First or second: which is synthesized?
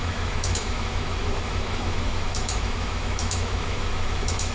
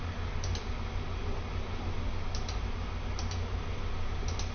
first